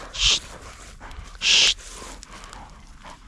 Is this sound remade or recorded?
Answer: recorded